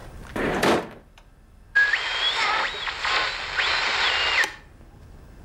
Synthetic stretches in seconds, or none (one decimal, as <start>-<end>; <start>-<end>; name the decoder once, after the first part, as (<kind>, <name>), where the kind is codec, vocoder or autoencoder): 0.0-2.9 (vocoder, BigVGAN v2)